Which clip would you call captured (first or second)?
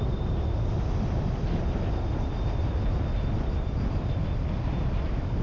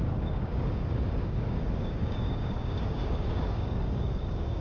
first